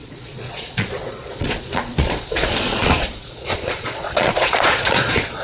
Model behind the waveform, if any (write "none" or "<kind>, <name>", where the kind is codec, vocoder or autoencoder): vocoder, Vocos